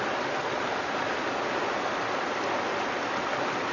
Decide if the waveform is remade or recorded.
recorded